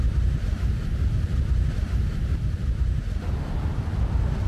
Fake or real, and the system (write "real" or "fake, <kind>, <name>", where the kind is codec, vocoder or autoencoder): fake, vocoder, BigVGAN v2